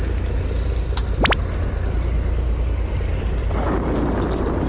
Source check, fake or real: real